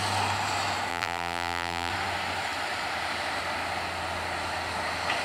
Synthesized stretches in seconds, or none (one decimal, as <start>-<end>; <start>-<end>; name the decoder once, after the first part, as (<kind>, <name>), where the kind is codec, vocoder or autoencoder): 0.9-1.9 (vocoder, BigVGAN v2)